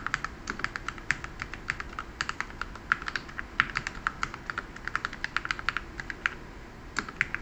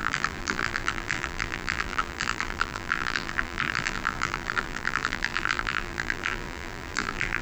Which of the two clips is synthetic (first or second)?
second